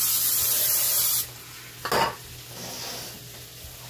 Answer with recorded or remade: recorded